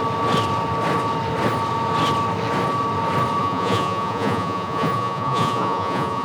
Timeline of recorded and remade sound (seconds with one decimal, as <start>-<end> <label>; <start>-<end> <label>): 0.0-3.4 recorded; 3.4-6.2 remade